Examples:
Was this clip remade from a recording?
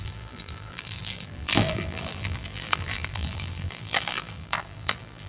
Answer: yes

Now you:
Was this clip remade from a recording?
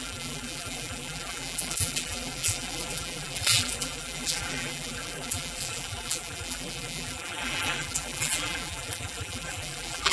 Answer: yes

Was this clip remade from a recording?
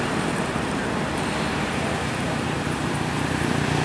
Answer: yes